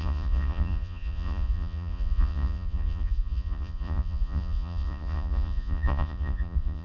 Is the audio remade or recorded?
remade